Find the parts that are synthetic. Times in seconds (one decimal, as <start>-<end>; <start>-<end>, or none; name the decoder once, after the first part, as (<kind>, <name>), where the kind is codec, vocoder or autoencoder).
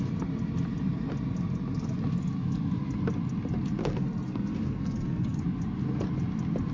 3.8-5.4 (codec, SNAC)